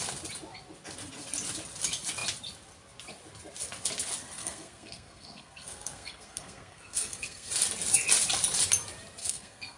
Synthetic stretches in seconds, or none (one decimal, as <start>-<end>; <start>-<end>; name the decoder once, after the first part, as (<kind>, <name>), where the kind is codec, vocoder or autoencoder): 4.4-7.5 (codec, SNAC); 9.2-9.8